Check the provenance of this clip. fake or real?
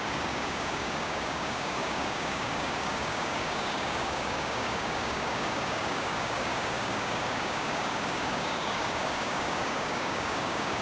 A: fake